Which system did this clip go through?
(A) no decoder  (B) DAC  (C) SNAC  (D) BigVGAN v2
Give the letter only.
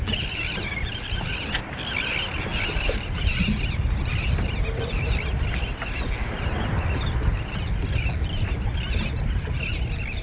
A